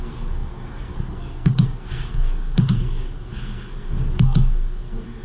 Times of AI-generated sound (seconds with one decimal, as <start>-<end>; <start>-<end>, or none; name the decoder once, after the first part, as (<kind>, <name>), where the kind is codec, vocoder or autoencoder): 0.0-5.2 (codec, SNAC)